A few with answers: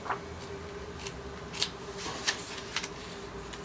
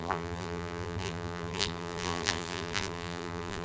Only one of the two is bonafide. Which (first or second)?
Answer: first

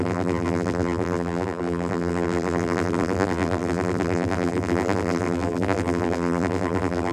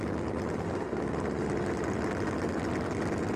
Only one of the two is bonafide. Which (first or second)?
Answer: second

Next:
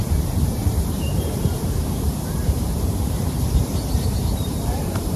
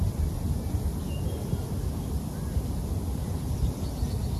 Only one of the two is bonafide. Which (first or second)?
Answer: second